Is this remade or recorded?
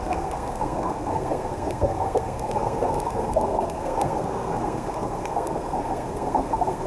remade